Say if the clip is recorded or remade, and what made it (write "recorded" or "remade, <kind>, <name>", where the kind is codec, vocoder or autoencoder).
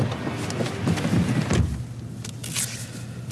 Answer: recorded